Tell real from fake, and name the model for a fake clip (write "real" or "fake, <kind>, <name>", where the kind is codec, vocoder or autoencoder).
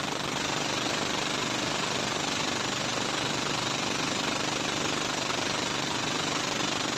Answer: real